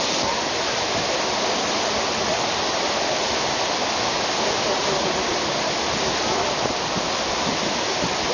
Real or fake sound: real